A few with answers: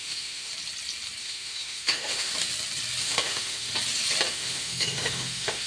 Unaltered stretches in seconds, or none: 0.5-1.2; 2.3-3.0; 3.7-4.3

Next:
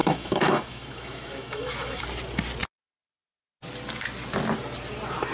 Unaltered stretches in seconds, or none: 2.0-5.3

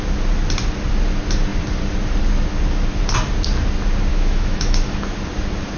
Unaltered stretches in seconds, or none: 0.0-4.1; 5.0-5.8

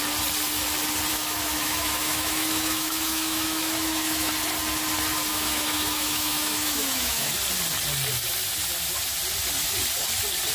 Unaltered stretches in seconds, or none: 0.0-1.1; 4.3-5.3; 7.3-10.5

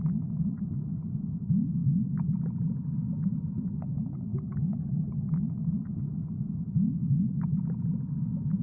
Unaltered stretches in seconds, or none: 0.0-4.3; 5.9-8.6

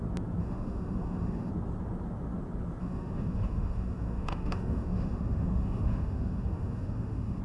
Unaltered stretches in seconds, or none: 0.0-0.4; 1.5-2.8